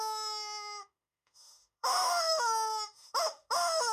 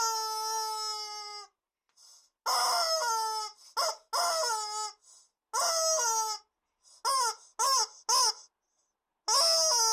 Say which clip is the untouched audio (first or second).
second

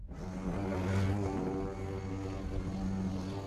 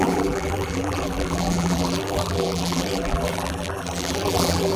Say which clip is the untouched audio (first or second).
first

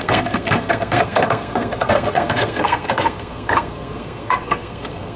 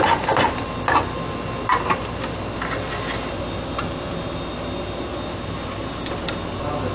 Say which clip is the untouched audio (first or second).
second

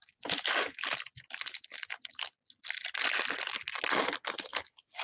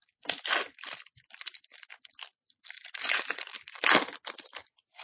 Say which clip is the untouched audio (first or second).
first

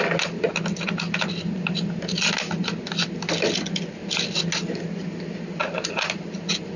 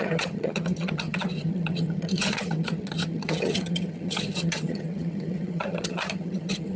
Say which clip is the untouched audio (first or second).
first